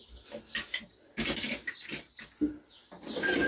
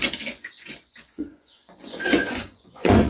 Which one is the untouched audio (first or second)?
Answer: first